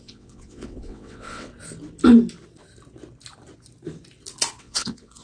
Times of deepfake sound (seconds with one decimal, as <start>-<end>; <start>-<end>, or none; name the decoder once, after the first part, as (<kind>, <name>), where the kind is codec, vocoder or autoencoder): 0.0-1.5 (vocoder, WaveNeXt); 4.6-5.2